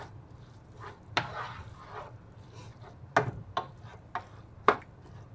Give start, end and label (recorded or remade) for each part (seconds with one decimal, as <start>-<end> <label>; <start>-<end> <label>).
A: 0.0-5.3 recorded